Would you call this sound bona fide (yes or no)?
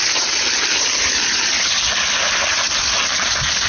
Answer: no